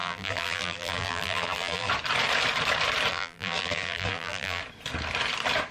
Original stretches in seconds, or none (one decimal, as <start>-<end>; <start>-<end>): 1.9-3.1; 4.6-5.7